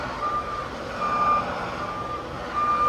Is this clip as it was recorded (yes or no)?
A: yes